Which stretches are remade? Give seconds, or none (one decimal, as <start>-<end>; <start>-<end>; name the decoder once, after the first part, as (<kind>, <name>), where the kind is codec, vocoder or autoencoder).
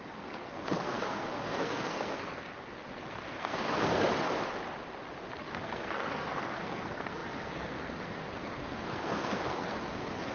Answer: 0.0-4.1 (codec, SNAC); 5.4-10.3